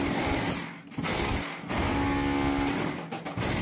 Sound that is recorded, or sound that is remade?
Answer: recorded